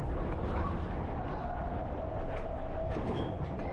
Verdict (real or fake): real